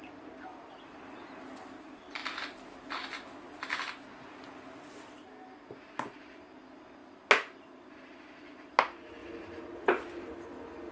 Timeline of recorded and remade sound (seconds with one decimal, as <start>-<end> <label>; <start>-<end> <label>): 0.0-9.2 recorded; 9.2-10.1 remade; 10.1-10.9 recorded